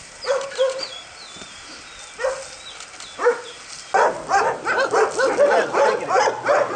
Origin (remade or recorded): recorded